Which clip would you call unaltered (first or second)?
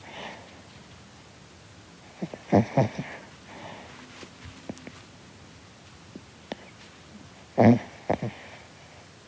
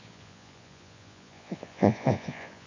first